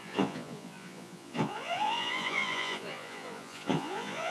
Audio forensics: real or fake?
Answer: fake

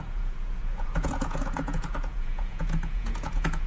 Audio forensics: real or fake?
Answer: fake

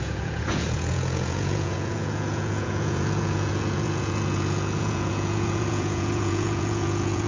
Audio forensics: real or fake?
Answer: fake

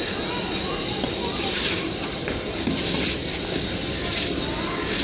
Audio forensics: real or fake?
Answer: real